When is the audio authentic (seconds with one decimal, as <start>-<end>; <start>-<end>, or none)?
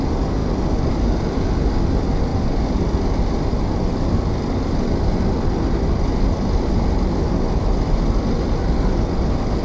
0.0-9.6